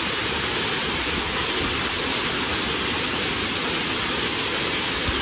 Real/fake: real